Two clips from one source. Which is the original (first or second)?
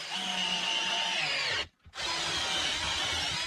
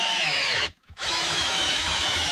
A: first